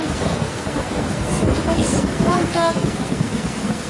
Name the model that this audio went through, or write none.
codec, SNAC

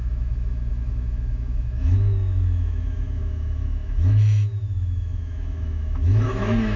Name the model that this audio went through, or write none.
autoencoder, DAC-VAE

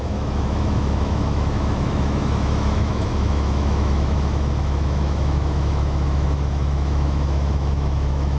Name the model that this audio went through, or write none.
autoencoder, DAC-VAE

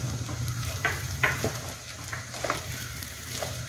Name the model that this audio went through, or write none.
vocoder, BigVGAN v2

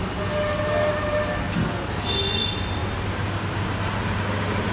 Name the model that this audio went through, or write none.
none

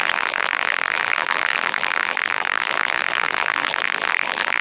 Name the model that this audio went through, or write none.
vocoder, BigVGAN v2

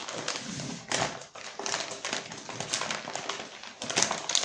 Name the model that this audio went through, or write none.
none